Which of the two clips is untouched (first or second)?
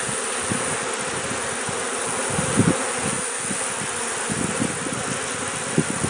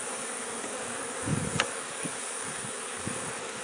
first